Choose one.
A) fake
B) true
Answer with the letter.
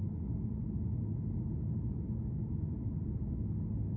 B